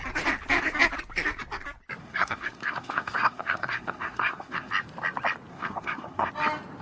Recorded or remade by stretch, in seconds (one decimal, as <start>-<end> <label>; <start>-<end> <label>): 0.0-2.0 recorded; 2.0-4.7 remade; 4.7-5.5 recorded; 5.5-6.3 remade; 6.3-6.8 recorded